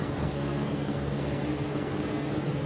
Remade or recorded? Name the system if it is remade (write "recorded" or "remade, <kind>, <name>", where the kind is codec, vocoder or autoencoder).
remade, codec, SNAC